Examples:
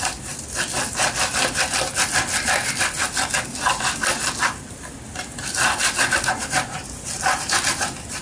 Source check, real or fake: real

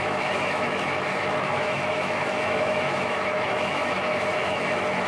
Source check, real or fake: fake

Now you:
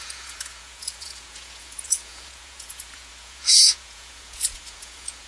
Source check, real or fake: fake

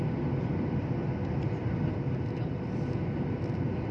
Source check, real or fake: real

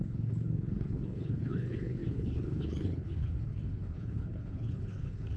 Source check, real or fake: fake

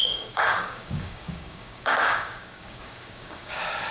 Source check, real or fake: fake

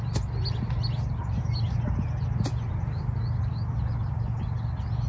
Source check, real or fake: real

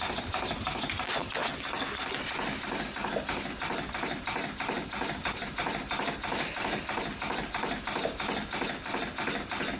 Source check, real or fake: real